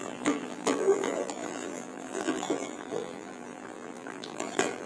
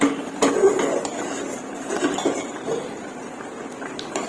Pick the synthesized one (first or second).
first